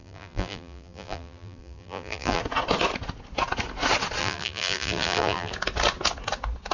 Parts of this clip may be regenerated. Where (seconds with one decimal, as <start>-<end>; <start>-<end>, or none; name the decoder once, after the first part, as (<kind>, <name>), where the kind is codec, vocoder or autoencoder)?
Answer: 0.0-2.4 (vocoder, BigVGAN v2); 4.2-5.5